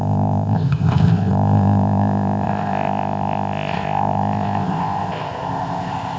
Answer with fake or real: fake